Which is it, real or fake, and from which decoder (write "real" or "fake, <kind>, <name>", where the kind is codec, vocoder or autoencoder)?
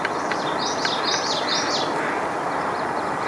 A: real